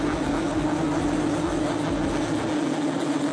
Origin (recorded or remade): recorded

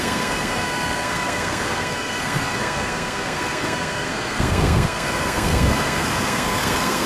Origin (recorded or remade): remade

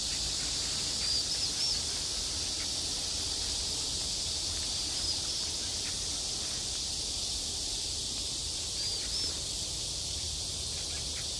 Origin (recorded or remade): recorded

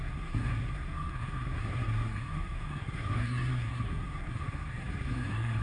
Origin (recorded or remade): remade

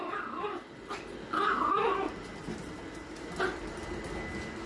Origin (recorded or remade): recorded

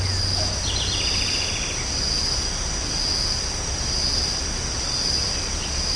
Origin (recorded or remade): recorded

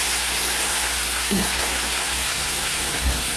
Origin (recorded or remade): remade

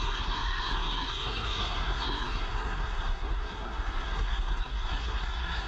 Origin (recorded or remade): remade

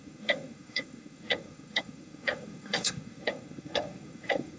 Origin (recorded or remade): remade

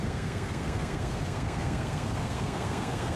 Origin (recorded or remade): remade